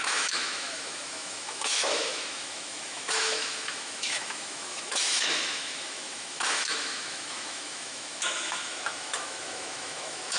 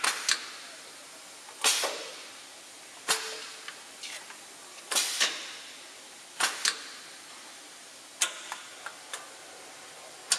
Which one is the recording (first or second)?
second